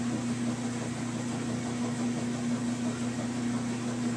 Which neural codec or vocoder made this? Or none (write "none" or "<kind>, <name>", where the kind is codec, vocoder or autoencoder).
none